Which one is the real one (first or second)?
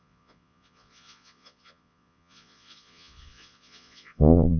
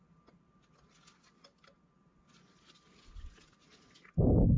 second